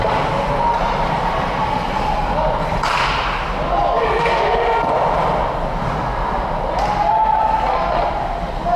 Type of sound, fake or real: real